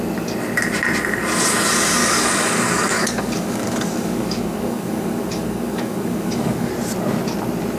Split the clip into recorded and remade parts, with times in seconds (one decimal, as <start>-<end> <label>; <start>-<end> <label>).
0.0-2.0 recorded; 2.0-6.7 remade; 6.7-7.8 recorded